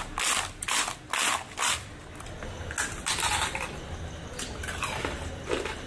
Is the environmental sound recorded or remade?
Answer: recorded